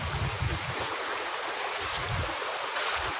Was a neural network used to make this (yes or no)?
yes